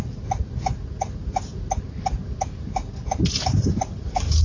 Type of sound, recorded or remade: recorded